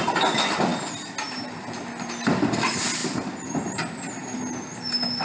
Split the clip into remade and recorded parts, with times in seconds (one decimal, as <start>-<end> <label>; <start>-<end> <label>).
0.0-5.2 recorded